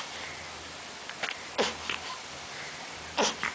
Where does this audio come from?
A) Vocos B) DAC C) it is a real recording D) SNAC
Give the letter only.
C